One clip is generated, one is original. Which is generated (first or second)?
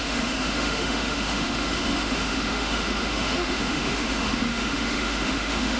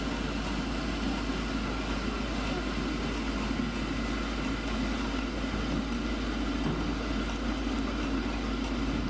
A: first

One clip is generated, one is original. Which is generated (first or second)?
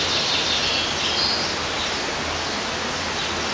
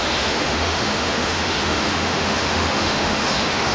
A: second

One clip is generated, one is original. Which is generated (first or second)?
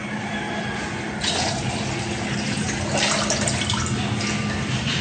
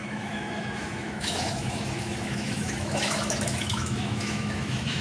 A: second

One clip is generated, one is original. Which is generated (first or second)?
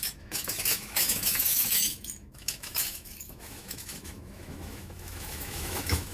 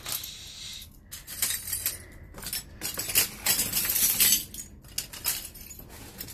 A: first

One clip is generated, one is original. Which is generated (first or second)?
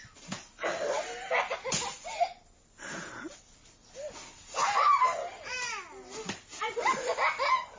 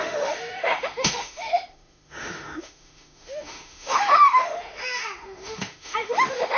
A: second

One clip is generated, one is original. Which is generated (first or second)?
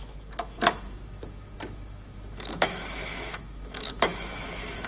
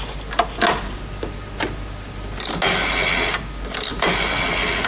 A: first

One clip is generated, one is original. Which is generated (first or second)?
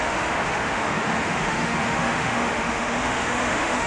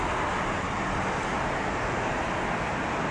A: first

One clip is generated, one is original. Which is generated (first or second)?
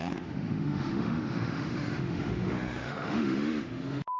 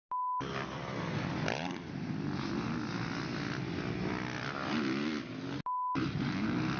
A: first